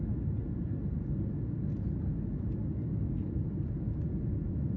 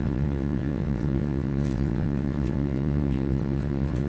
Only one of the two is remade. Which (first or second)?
second